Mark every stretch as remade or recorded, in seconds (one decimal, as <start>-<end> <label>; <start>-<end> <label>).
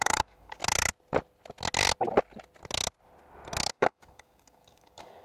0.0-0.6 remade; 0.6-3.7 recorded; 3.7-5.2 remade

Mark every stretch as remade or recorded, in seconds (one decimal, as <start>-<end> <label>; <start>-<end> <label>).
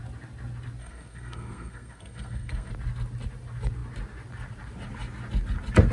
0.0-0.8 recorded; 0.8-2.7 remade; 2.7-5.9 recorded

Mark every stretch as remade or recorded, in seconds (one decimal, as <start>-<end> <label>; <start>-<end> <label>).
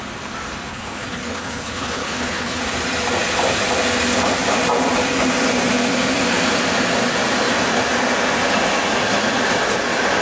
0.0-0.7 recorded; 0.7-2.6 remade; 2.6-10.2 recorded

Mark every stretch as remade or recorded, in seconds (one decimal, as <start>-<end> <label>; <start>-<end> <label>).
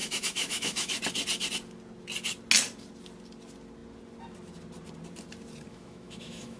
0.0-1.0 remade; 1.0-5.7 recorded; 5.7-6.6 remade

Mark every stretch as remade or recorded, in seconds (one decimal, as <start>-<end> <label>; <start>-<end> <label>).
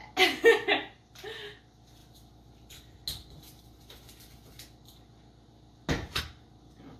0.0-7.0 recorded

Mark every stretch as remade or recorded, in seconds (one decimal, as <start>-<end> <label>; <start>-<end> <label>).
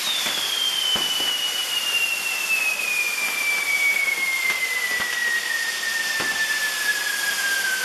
0.0-1.6 recorded; 1.6-2.7 remade; 2.7-7.8 recorded